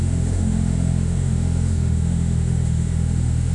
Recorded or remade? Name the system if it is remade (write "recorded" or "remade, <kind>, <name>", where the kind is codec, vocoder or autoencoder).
remade, autoencoder, DAC-VAE